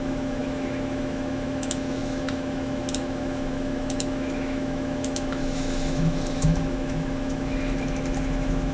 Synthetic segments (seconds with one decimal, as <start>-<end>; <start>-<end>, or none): 0.0-8.7